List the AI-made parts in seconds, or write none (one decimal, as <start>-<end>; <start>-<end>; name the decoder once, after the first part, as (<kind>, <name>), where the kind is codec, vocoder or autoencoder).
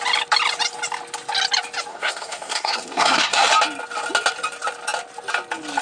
1.9-3.5 (codec, SNAC)